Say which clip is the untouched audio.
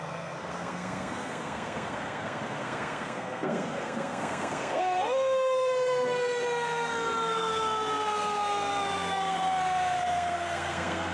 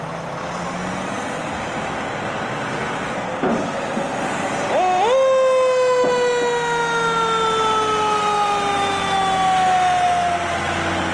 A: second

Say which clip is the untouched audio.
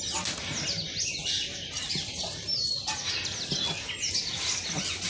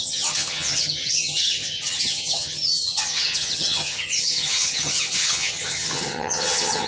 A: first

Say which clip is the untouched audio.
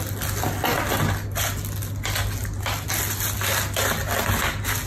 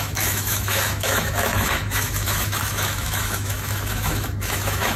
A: first